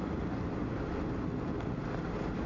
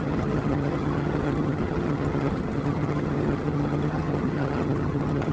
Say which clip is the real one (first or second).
first